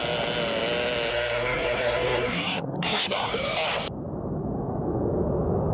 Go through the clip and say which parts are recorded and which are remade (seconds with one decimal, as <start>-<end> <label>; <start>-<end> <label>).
0.0-1.1 recorded; 1.1-3.3 remade; 3.3-5.7 recorded